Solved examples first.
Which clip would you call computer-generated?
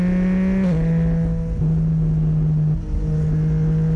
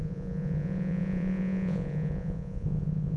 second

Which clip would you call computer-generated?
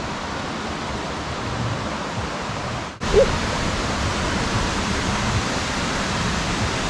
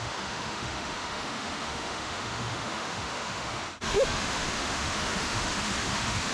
second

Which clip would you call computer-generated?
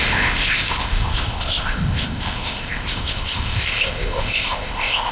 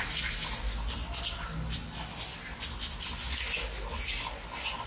first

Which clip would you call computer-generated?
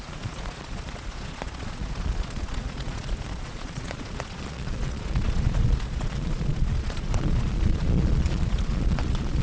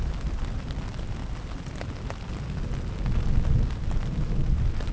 first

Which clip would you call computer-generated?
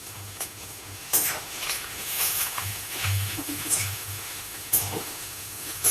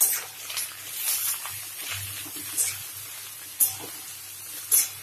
first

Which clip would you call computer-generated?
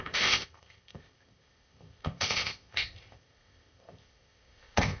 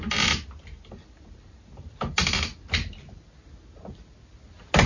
first